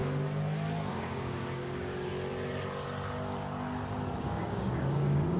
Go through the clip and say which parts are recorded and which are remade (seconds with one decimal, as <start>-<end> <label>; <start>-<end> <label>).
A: 0.0-0.9 recorded; 0.9-2.1 remade; 2.1-4.2 recorded; 4.2-5.4 remade